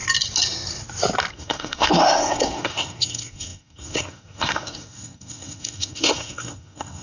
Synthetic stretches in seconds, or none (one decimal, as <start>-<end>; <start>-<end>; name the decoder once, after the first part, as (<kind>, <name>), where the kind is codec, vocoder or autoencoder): 1.3-7.0 (codec, SNAC)